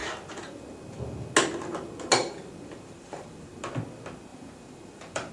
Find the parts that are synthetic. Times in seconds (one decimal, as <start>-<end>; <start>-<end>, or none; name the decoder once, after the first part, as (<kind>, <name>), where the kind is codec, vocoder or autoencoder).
2.2-3.5 (vocoder, BigVGAN v2); 4.3-5.3